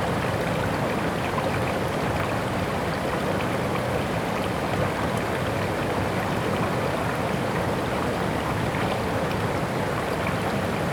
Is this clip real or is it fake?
real